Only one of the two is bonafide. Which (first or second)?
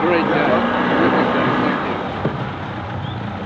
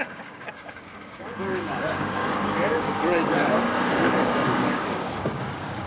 first